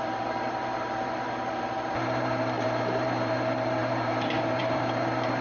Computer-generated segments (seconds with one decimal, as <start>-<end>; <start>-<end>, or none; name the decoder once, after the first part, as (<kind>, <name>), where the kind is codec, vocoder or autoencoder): 0.0-5.4 (vocoder, BigVGAN v2)